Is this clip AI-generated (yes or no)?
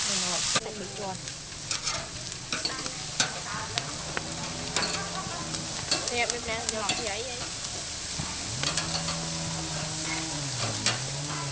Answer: no